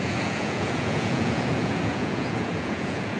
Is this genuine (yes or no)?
no